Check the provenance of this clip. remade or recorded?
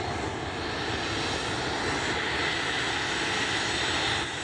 recorded